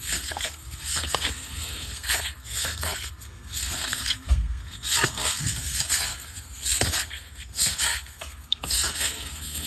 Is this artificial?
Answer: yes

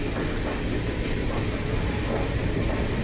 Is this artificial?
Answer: no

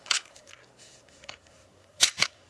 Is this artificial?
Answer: yes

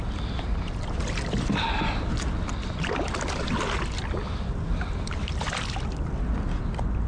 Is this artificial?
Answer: no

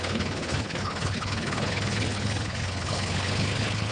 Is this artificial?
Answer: yes